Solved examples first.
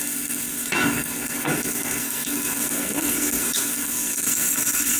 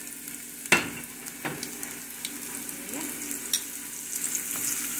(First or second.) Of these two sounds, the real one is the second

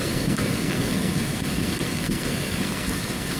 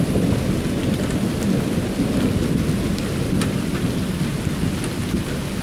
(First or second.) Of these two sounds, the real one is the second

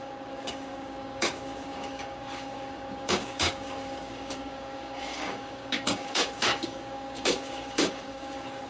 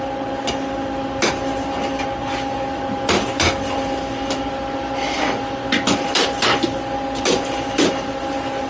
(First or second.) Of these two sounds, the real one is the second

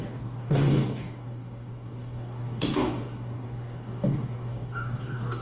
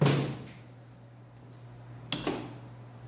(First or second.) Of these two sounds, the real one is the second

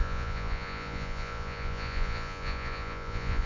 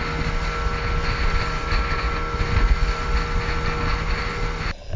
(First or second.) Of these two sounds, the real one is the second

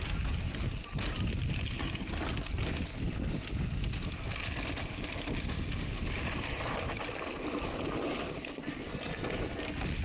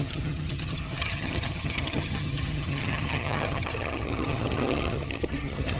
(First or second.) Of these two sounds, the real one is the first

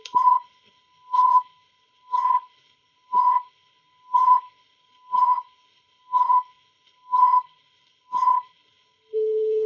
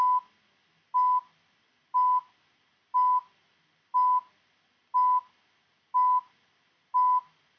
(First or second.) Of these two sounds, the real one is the second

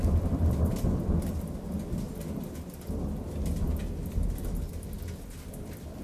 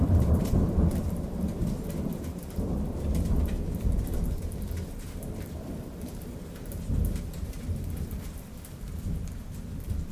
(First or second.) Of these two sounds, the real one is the first